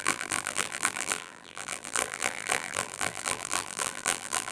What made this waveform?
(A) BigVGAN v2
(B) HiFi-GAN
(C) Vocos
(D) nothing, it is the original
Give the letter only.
A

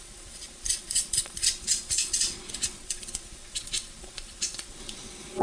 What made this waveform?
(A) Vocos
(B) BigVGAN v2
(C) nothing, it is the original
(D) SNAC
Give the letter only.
A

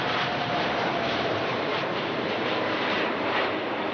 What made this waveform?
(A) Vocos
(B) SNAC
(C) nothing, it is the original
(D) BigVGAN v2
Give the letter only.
D